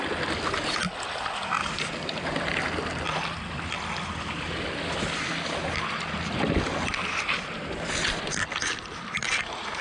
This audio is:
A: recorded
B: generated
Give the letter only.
A